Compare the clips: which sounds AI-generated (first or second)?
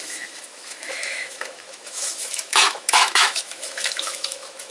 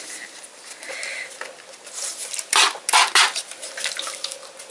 first